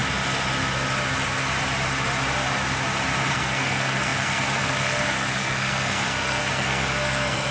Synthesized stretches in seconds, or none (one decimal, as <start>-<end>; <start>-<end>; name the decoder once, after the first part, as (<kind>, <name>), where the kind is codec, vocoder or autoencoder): 3.3-7.5 (codec, SNAC)